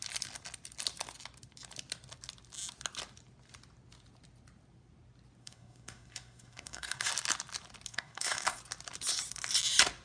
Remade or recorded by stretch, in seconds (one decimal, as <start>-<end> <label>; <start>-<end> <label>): 0.0-5.4 recorded; 5.4-7.1 remade; 7.1-7.9 recorded; 7.9-8.6 remade; 8.6-10.0 recorded